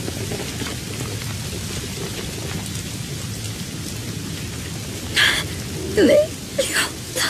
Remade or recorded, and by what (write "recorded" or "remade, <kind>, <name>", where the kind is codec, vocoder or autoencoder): recorded